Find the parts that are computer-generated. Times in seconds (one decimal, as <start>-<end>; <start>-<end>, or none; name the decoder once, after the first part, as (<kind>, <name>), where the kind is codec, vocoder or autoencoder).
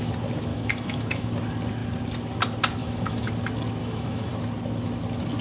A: 0.5-1.3 (autoencoder, DAC-VAE); 2.8-3.3; 3.8-4.3